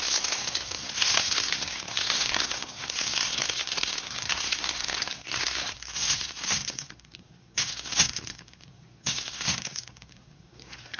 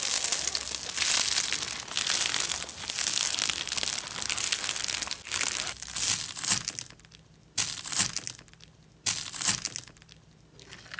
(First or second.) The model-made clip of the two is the first